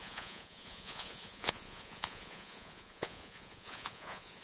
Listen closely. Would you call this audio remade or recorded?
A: remade